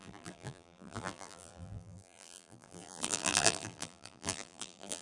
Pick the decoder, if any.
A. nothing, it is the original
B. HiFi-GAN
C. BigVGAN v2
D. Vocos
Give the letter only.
C